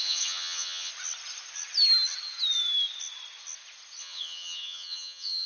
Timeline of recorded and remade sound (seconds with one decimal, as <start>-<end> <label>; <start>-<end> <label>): 0.0-0.9 remade; 0.9-4.0 recorded; 4.0-5.5 remade